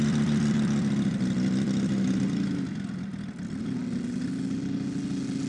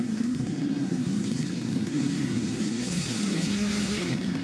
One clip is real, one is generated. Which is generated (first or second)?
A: second